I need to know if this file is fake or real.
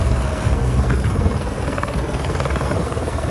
fake